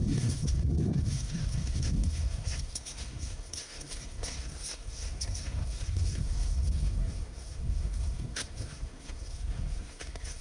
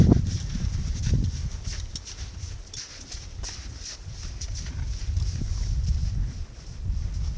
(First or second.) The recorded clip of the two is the second